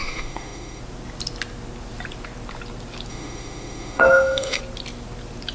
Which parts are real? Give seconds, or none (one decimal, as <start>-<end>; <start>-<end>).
0.8-3.1; 4.6-5.5